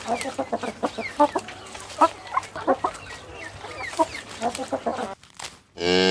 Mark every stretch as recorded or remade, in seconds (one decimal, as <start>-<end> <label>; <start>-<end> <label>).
0.0-1.6 remade; 1.6-3.7 recorded; 3.7-4.9 remade; 4.9-6.1 recorded